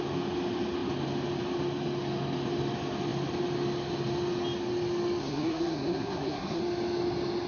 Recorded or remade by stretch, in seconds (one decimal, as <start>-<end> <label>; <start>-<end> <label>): 0.0-5.2 recorded; 5.2-6.6 remade; 6.6-7.5 recorded